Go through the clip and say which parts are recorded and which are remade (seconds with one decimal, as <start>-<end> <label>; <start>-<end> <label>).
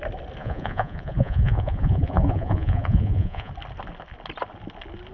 0.0-0.4 recorded; 0.4-3.5 remade; 3.5-5.1 recorded